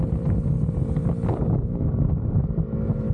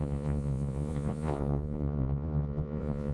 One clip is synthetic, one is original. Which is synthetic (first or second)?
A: second